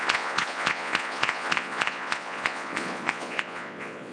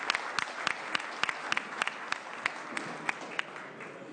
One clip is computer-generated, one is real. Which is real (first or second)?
second